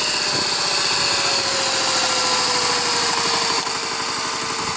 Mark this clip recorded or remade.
recorded